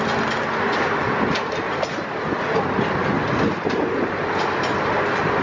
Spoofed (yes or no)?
no